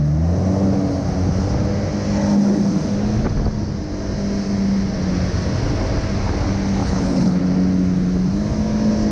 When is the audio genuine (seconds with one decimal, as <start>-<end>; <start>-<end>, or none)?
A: 0.0-6.8; 7.4-9.1